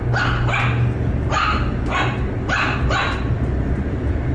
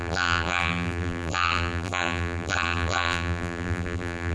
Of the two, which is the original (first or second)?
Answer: first